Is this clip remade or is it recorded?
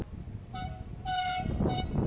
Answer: recorded